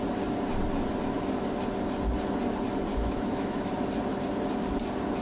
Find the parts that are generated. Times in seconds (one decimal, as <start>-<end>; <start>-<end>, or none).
2.9-3.7